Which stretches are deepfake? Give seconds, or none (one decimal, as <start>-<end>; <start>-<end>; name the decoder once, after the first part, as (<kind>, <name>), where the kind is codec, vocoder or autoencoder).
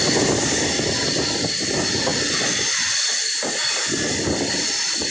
none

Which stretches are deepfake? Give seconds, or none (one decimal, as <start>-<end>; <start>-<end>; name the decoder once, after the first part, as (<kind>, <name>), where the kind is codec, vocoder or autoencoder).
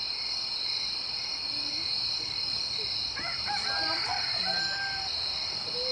none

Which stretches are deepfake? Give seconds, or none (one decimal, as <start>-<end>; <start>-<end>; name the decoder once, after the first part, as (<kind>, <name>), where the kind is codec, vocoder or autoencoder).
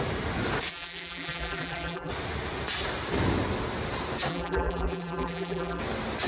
0.7-2.1 (vocoder, BigVGAN v2); 4.3-5.8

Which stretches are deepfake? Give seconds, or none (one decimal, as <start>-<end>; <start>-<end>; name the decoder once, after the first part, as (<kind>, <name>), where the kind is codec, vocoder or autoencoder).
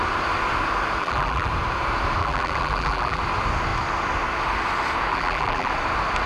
1.0-1.5 (vocoder, BigVGAN v2); 2.2-3.2; 5.1-5.7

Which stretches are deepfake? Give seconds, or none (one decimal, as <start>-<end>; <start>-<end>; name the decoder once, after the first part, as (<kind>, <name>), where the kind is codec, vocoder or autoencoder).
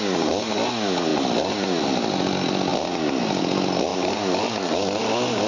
none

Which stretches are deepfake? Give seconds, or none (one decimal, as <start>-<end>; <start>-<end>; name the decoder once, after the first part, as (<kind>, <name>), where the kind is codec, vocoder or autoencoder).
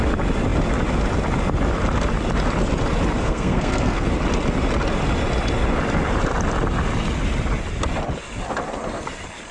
3.2-4.1 (codec, SNAC)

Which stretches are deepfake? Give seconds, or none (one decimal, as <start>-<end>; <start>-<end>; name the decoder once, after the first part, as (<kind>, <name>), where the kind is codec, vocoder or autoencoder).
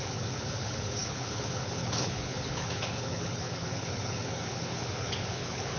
0.0-5.8 (codec, HILCodec)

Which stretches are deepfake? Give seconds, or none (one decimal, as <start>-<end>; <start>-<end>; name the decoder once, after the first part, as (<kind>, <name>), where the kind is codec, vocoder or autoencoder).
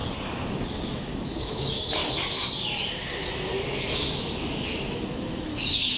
0.8-2.0 (autoencoder, DAC-VAE); 3.9-6.0